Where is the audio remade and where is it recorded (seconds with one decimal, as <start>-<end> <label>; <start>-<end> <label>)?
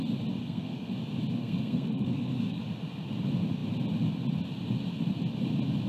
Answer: 0.0-0.4 recorded; 0.4-0.9 remade; 0.9-1.4 recorded; 1.4-2.6 remade; 2.6-5.9 recorded